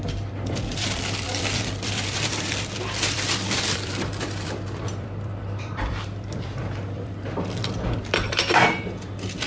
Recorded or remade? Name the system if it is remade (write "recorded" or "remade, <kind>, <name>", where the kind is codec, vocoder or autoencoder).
remade, vocoder, BigVGAN v2